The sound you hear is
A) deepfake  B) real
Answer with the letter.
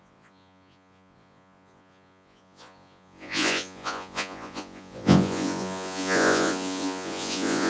A